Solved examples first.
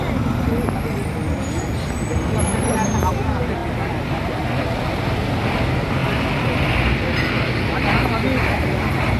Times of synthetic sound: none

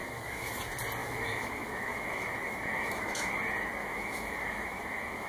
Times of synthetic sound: 0.0-0.6 (autoencoder, DAC-VAE); 1.0-3.3; 3.8-5.3